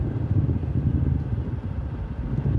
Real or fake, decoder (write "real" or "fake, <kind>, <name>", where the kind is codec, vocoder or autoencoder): real